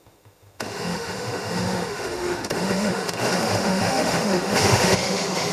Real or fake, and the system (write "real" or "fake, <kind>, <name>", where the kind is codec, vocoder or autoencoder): fake, autoencoder, DAC-VAE